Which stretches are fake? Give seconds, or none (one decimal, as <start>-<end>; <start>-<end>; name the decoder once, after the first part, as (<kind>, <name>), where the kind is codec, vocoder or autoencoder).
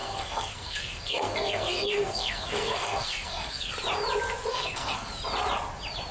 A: 0.0-3.7 (codec, SNAC); 4.5-5.1